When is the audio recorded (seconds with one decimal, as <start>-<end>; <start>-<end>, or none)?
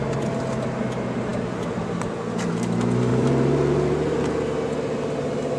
0.0-3.1; 4.2-5.6